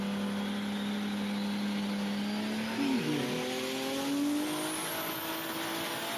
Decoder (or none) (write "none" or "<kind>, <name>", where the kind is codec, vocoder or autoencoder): none